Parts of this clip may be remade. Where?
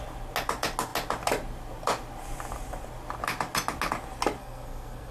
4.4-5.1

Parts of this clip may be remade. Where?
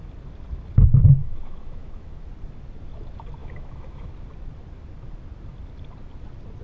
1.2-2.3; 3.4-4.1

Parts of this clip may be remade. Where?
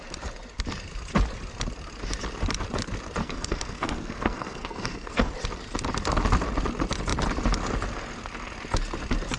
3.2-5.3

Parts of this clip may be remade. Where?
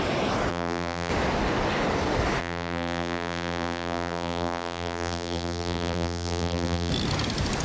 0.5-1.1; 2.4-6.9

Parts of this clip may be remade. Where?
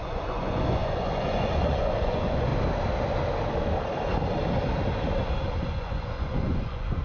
0.0-2.5; 5.7-7.0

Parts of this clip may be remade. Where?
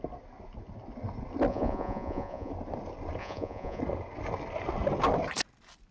1.5-2.5; 3.2-3.8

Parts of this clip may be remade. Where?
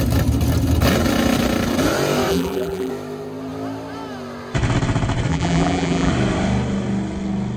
2.3-2.9; 5.3-6.1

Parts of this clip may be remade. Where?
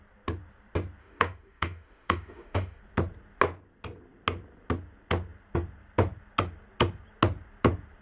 1.0-2.8